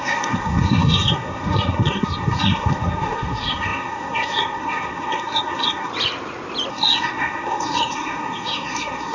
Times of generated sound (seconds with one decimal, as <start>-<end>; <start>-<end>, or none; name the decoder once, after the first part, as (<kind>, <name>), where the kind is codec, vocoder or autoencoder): 0.0-5.9 (codec, SNAC); 6.7-9.1

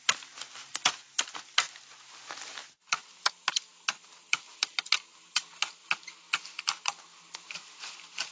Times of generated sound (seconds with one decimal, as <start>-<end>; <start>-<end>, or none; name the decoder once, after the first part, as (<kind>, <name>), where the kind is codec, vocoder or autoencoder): none

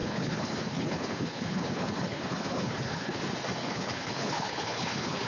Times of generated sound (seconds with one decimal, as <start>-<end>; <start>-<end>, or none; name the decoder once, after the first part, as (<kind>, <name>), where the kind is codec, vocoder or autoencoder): 0.0-3.2 (codec, HILCodec); 3.6-5.3

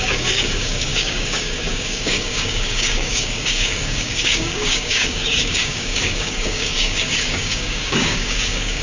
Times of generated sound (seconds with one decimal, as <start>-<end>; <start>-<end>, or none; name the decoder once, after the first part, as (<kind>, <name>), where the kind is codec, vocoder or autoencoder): 0.0-8.8 (codec, DAC)

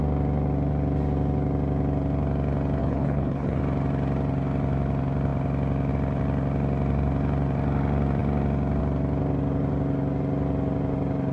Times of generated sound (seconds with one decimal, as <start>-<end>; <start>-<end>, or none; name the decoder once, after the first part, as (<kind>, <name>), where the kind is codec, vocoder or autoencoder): 2.8-3.6 (codec, HILCodec)